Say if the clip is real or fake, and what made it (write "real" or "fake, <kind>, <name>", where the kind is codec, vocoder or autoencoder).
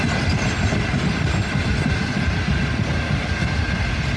real